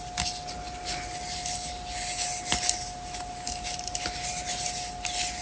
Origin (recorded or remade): recorded